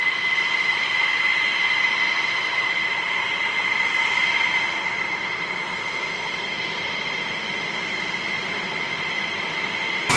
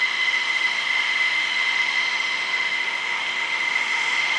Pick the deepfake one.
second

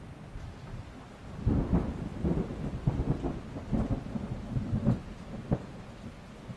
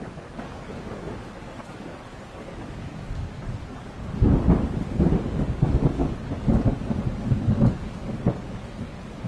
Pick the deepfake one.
second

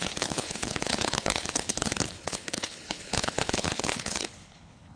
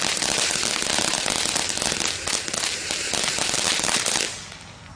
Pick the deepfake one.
first